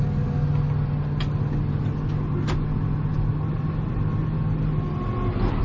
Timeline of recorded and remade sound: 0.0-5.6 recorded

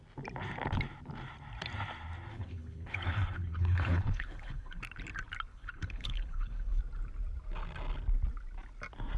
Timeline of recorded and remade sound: 0.0-2.3 recorded; 2.3-4.8 remade; 4.8-5.5 recorded; 5.5-6.8 remade; 6.8-9.2 recorded

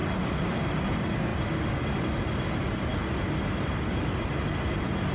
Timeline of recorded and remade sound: 0.0-5.1 recorded

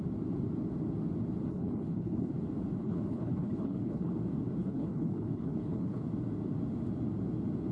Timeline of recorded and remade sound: 0.0-1.5 recorded; 1.5-2.3 remade; 2.3-2.8 recorded; 2.8-4.1 remade; 4.1-4.6 recorded; 4.6-6.1 remade; 6.1-7.7 recorded

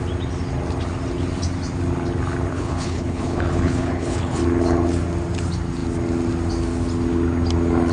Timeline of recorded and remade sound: 0.0-2.5 recorded; 2.5-4.4 remade; 4.4-7.9 recorded